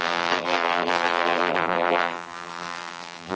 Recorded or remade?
remade